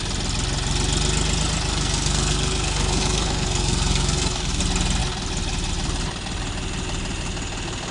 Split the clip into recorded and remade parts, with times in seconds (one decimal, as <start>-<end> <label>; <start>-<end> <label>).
0.0-1.7 recorded; 1.7-4.6 remade; 4.6-7.9 recorded